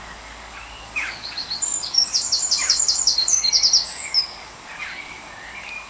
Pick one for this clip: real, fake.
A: fake